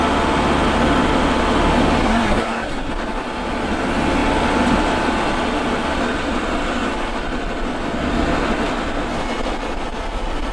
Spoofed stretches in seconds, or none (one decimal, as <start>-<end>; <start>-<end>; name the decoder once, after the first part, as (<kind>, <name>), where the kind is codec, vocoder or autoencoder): 2.0-2.9 (codec, SNAC)